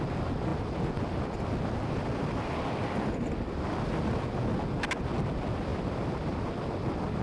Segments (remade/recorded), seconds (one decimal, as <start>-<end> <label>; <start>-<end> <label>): 0.0-7.2 recorded